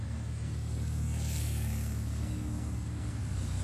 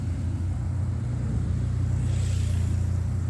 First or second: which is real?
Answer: second